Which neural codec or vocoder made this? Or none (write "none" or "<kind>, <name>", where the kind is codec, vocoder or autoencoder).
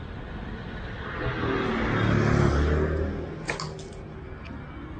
none